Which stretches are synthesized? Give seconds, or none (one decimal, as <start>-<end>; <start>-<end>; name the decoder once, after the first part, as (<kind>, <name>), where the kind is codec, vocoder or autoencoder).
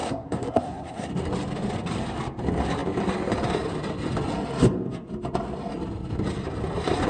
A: 0.0-1.1 (codec, SNAC)